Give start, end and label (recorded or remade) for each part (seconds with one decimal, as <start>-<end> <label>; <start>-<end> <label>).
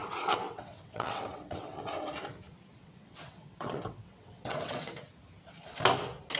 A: 0.0-1.8 remade; 1.8-2.7 recorded; 2.7-4.9 remade; 4.9-6.4 recorded